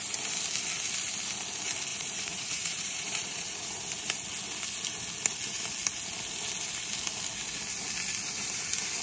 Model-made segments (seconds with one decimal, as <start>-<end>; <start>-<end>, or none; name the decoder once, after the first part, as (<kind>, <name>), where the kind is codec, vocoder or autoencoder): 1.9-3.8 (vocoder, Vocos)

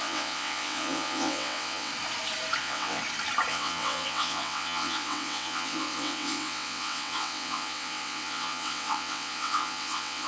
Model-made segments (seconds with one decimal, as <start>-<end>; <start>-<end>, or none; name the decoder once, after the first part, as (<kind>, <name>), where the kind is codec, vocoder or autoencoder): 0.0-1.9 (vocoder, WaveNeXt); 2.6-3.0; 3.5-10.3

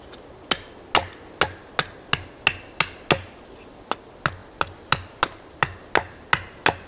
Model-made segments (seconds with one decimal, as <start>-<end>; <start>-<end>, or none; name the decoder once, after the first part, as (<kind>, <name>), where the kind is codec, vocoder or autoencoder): none

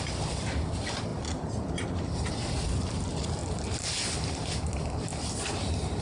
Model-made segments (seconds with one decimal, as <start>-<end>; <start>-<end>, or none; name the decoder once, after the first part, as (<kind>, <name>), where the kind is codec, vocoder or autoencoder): 0.0-1.1 (vocoder, BigVGAN v2); 2.3-3.4; 4.4-5.1; 5.6-6.0

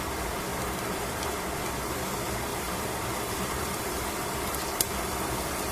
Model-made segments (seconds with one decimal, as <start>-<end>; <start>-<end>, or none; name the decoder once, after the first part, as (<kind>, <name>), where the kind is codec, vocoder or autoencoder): 0.5-1.4 (vocoder, BigVGAN v2); 2.5-4.1

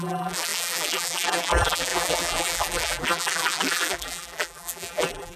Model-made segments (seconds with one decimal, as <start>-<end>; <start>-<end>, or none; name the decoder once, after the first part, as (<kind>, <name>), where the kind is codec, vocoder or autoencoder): 0.0-5.4 (vocoder, BigVGAN v2)

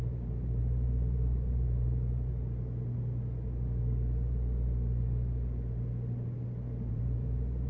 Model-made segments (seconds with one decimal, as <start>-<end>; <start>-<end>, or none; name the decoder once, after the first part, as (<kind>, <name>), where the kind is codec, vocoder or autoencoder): 0.0-2.3 (vocoder, BigVGAN v2); 6.9-7.7